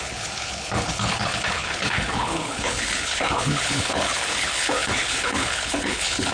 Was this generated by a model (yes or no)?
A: yes